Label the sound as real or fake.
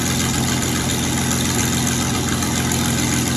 real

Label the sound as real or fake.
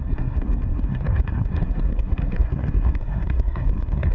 fake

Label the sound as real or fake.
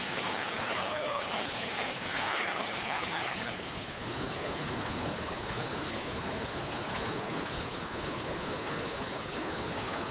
fake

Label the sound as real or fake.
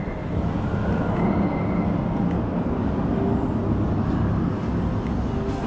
real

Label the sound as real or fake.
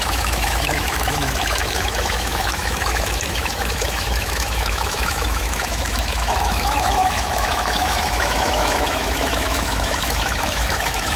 fake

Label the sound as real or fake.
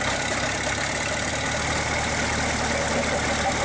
real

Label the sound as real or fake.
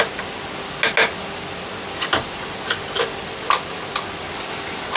real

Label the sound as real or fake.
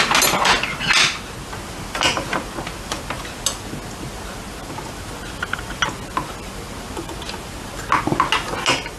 real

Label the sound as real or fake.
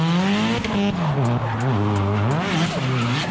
real